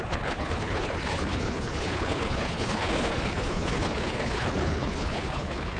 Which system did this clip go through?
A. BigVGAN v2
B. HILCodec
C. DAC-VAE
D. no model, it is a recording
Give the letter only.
B